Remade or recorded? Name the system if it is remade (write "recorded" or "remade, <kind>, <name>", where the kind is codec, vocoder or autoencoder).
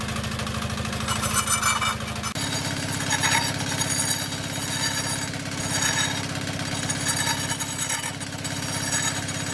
recorded